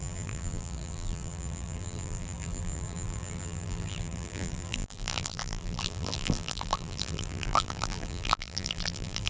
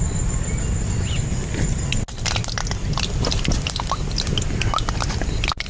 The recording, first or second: second